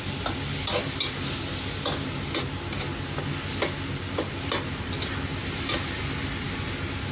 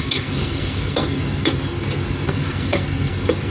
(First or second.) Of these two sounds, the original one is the first